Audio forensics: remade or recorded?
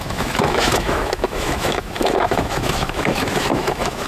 remade